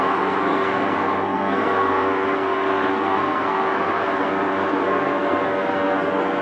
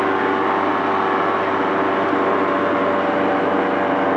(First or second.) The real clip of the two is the second